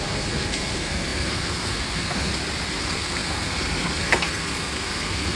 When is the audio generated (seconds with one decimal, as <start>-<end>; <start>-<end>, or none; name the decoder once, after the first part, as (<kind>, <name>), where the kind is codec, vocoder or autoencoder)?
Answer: 0.0-2.3 (codec, SNAC); 2.8-5.3